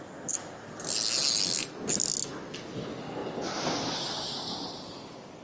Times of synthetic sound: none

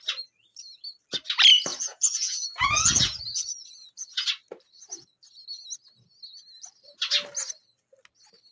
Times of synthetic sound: 1.7-4.3 (vocoder, Vocos)

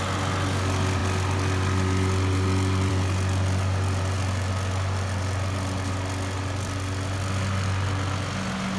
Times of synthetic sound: none

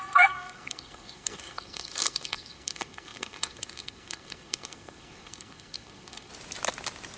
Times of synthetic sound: 0.0-6.3 (codec, SNAC)

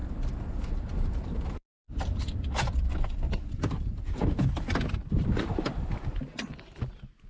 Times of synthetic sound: 0.0-4.4 (vocoder, BigVGAN v2); 5.0-6.6

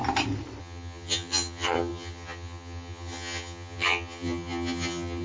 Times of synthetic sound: 0.6-5.2 (vocoder, HiFi-GAN)

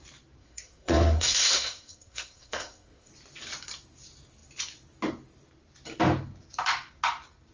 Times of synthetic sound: 0.4-3.1 (codec, SNAC)